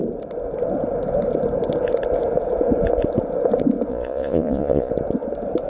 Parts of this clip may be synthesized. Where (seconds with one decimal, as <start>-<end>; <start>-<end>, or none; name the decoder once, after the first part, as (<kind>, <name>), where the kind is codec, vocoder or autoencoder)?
3.9-4.9 (vocoder, Vocos)